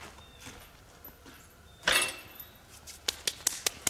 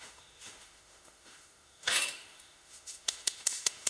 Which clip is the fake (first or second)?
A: second